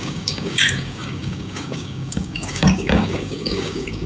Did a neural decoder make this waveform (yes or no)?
yes